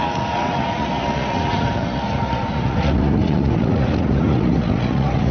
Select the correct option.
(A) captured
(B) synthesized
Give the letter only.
B